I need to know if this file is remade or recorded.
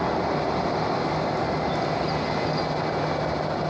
recorded